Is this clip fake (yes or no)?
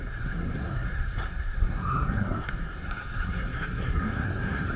yes